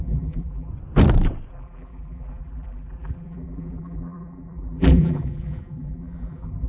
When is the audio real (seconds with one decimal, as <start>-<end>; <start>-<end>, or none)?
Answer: 0.7-1.5